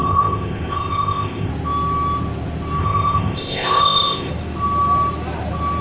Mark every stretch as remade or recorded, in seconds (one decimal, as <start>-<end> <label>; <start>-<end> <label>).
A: 0.0-1.5 remade; 1.5-2.8 recorded; 2.8-4.3 remade; 4.3-5.8 recorded